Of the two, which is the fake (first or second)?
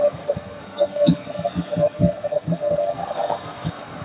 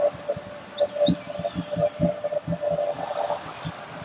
first